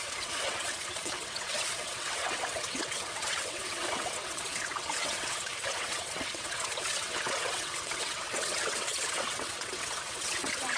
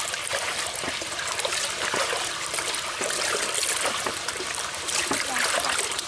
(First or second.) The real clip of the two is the second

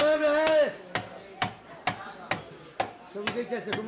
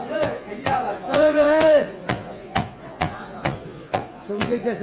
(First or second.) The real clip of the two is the first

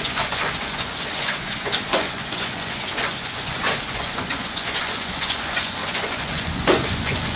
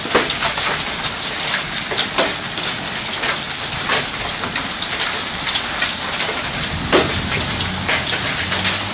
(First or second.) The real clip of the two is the second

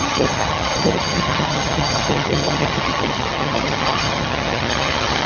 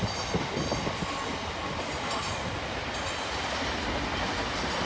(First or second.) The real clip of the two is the second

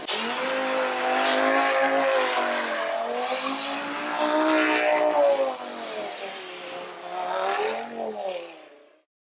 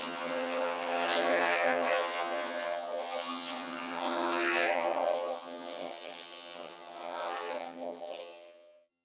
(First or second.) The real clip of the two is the first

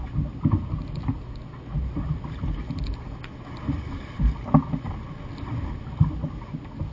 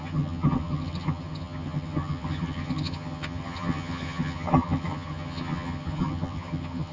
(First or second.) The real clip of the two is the first